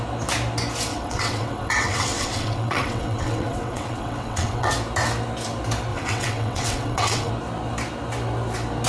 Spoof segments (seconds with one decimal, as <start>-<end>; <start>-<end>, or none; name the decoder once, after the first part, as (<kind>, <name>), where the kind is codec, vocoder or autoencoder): 0.9-4.7 (vocoder, WaveNeXt); 5.9-7.3